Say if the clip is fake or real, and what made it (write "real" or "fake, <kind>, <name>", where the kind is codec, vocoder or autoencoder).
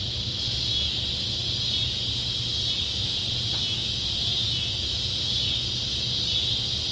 real